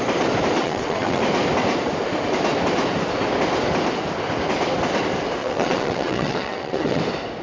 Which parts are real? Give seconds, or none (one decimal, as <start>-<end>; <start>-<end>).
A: 0.0-0.6; 1.2-5.4; 7.0-7.4